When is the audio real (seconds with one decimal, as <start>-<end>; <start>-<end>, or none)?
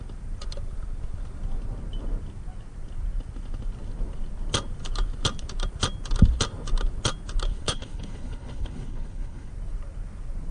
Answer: 0.0-7.5; 9.5-10.5